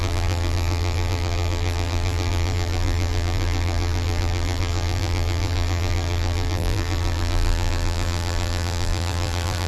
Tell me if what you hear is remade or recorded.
remade